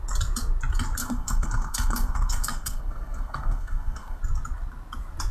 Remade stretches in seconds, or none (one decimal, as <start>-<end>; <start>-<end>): 1.0-4.2